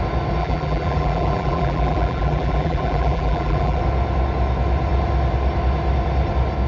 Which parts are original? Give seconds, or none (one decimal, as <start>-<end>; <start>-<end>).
0.0-0.4; 3.8-6.7